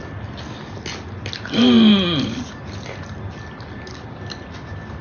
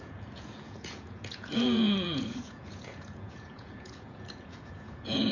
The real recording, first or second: first